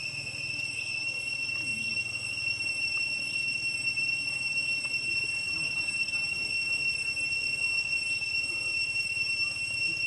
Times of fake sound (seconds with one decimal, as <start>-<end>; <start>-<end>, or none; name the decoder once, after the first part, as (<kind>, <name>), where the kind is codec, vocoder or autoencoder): 0.0-1.7 (vocoder, BigVGAN v2); 2.7-6.6; 8.1-10.1